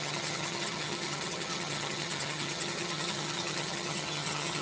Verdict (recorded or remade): remade